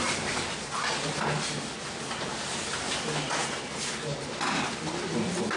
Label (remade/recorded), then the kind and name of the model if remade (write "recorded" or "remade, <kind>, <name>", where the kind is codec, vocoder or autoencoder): recorded